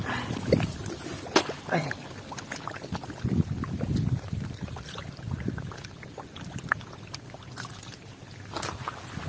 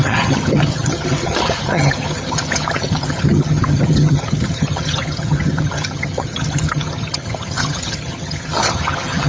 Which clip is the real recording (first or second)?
first